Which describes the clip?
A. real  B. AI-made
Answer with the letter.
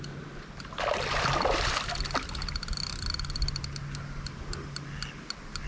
A